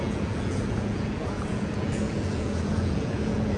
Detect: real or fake fake